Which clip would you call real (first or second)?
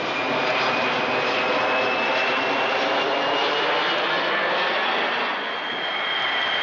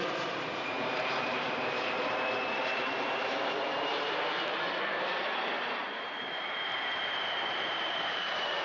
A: first